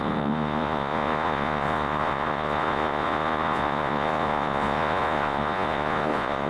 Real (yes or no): no